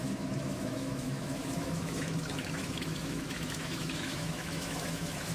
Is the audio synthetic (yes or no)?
yes